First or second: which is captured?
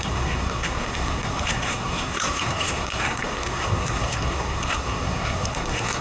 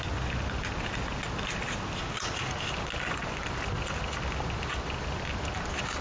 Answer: second